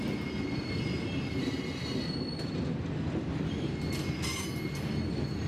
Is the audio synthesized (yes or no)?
no